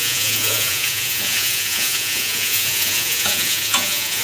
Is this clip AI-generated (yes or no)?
yes